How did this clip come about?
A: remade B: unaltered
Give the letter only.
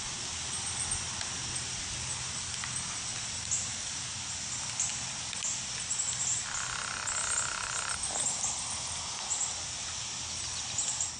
B